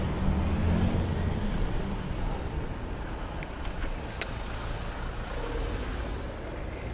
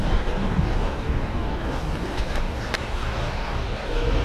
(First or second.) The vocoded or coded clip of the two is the second